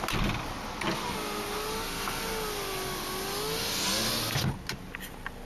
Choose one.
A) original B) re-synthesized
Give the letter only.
A